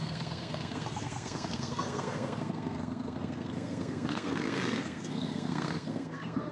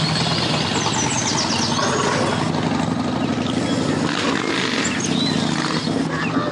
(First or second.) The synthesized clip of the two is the first